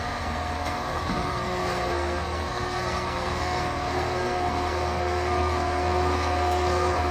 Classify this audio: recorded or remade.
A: remade